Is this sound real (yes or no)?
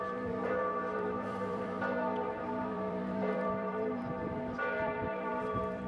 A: no